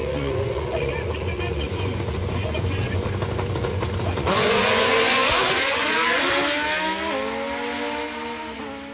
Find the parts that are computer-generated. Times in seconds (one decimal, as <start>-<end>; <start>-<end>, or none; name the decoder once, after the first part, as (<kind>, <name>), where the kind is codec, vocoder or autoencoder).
0.0-3.0 (vocoder, Vocos); 3.7-6.2